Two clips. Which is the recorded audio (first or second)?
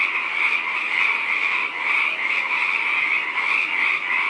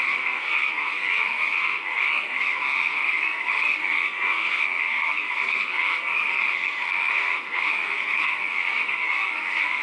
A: first